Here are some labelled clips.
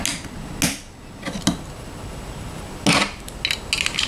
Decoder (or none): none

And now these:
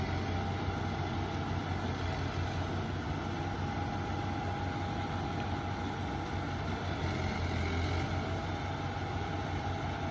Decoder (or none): none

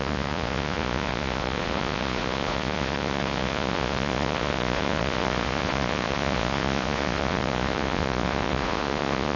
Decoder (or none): vocoder, Vocos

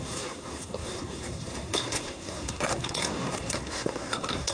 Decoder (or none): codec, SNAC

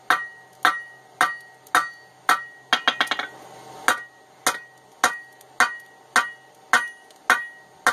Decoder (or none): none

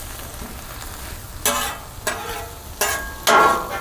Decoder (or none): none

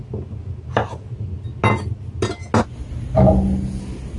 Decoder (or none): none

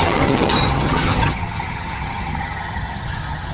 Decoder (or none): vocoder, HiFi-GAN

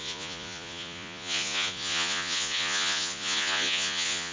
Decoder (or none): vocoder, Vocos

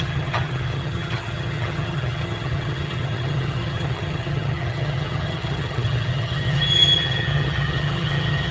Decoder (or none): vocoder, HiFi-GAN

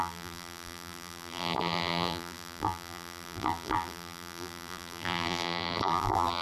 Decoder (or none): vocoder, BigVGAN v2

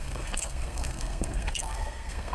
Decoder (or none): codec, SNAC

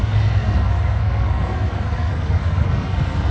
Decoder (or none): codec, SNAC